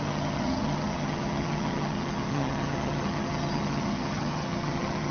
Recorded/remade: remade